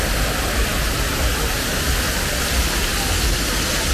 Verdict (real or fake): real